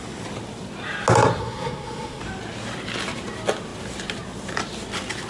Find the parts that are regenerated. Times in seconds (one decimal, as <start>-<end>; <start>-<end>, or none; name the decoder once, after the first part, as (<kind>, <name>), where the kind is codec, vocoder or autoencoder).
1.4-2.2 (codec, SNAC)